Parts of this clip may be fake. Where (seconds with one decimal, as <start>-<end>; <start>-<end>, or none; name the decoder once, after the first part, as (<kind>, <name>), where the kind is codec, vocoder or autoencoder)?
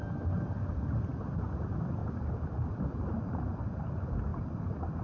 none